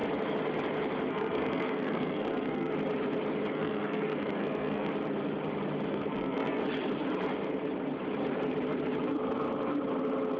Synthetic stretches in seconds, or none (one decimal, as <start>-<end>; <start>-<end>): 1.1-2.7; 3.5-4.9; 5.9-6.6